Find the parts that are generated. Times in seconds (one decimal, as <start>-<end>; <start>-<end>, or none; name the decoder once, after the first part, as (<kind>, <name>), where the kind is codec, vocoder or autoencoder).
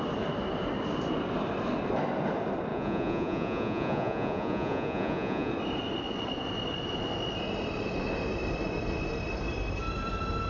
2.7-5.5 (vocoder, Vocos)